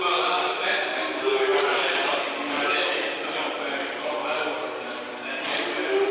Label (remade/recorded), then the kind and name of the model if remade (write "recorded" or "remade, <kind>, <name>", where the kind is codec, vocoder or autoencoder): remade, vocoder, BigVGAN v2